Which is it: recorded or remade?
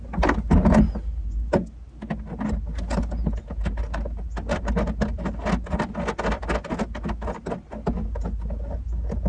recorded